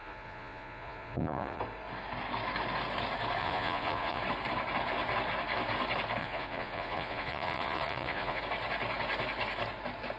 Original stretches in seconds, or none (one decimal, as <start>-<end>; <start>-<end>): 1.6-3.4; 4.2-6.2; 8.4-10.2